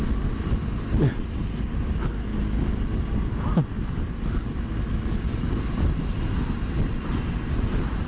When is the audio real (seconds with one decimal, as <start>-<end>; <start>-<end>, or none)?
0.0-8.1